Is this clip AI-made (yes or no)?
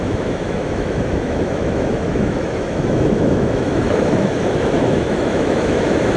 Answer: yes